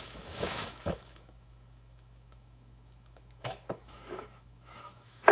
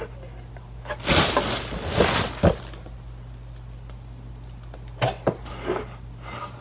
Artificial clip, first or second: first